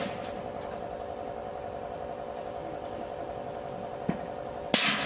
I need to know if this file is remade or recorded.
recorded